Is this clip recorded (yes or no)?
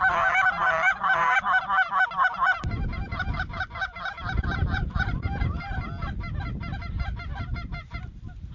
no